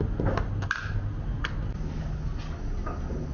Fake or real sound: real